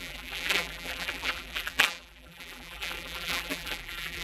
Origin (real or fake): fake